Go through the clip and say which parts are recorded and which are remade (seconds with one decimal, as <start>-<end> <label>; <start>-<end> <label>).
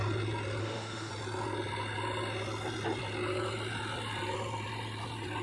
0.0-0.6 recorded; 0.6-1.1 remade; 1.1-5.4 recorded